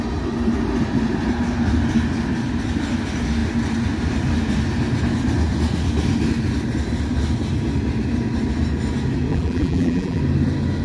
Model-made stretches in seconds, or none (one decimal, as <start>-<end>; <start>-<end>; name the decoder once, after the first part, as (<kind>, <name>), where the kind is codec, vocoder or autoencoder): 9.3-10.2 (vocoder, BigVGAN v2)